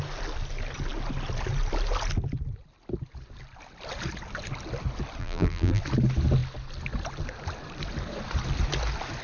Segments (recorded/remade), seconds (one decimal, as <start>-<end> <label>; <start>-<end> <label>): 0.0-5.2 recorded; 5.2-5.8 remade; 5.8-9.2 recorded